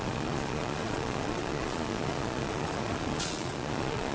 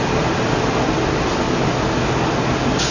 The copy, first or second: first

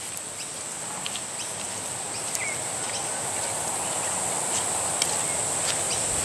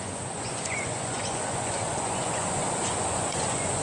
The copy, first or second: second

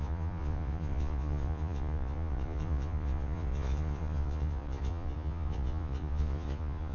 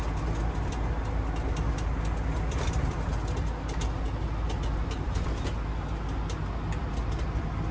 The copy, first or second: first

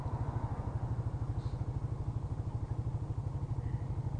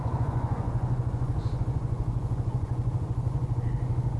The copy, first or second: second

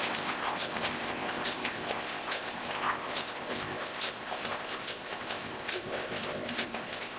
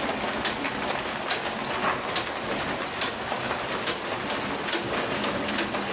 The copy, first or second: first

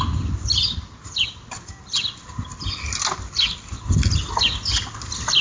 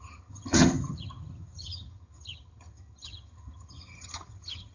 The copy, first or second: second